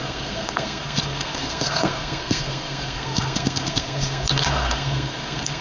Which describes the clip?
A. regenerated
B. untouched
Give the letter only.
A